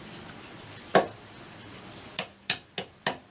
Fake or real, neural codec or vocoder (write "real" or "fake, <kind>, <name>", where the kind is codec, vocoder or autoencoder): real